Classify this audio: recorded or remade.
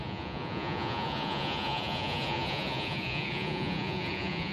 remade